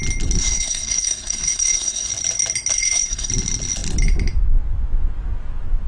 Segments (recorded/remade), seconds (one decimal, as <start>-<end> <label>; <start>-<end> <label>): 0.0-0.4 recorded; 0.4-2.1 remade; 2.1-2.7 recorded; 2.7-3.3 remade; 3.3-5.9 recorded